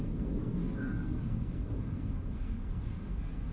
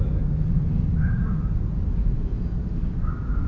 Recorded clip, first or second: second